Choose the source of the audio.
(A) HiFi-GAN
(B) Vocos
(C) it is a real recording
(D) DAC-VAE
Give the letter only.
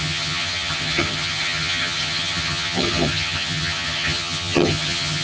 A